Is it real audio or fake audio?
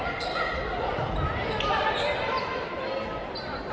real